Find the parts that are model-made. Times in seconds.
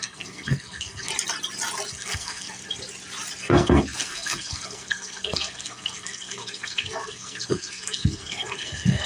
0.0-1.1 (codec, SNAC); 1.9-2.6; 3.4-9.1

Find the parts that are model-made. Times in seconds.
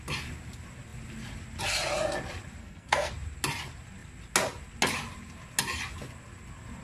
2.6-3.1 (codec, SNAC)